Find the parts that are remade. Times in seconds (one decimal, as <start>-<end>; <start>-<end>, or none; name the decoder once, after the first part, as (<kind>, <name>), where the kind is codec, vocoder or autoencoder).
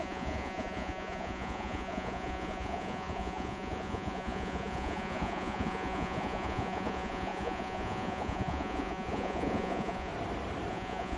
0.0-10.1 (vocoder, Vocos); 10.7-11.2